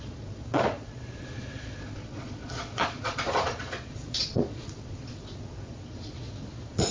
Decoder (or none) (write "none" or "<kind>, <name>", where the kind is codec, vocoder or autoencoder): vocoder, Vocos